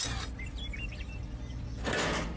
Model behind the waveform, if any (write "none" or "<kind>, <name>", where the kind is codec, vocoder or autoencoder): none